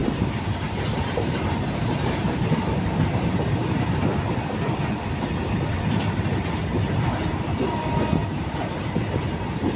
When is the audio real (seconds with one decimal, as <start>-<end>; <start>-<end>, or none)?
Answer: 4.0-8.2; 9.2-9.8